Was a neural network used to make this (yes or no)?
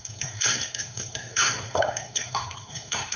yes